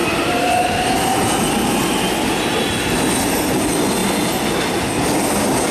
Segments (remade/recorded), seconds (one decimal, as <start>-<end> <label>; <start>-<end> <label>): 0.0-5.7 recorded